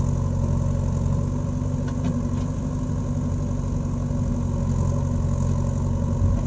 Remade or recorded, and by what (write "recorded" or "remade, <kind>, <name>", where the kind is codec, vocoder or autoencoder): recorded